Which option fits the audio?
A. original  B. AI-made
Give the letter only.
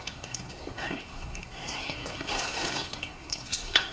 B